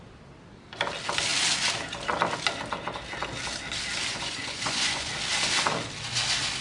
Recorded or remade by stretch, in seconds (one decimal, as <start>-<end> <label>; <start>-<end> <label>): 0.0-4.1 recorded; 4.1-5.1 remade; 5.1-6.6 recorded

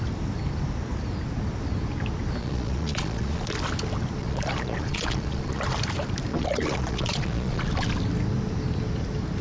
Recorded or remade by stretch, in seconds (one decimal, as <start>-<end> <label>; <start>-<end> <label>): 0.0-2.4 recorded; 2.4-3.5 remade; 3.5-4.2 recorded; 4.2-5.6 remade; 5.6-6.3 recorded; 6.3-7.7 remade; 7.7-9.4 recorded

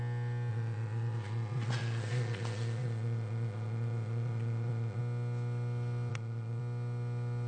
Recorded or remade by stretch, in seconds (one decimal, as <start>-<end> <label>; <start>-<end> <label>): 0.0-0.5 recorded; 0.5-5.0 remade; 5.0-6.1 recorded; 6.1-6.6 remade; 6.6-7.5 recorded

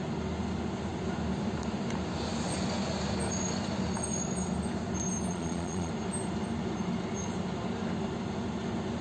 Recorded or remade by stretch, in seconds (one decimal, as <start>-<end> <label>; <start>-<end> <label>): 0.0-5.3 recorded; 5.3-5.9 remade; 5.9-9.0 recorded

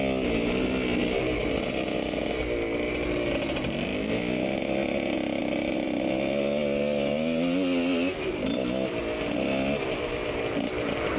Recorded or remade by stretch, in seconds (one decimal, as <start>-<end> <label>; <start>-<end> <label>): 0.0-11.2 recorded

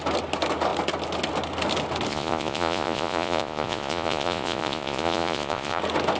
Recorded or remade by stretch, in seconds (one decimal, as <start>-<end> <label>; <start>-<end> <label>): 0.0-2.1 recorded; 2.1-5.8 remade; 5.8-6.2 recorded

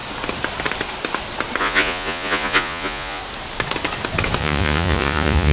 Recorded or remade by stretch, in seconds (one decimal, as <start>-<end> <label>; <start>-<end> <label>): 0.0-1.6 recorded; 1.6-3.2 remade; 3.2-4.4 recorded; 4.4-5.5 remade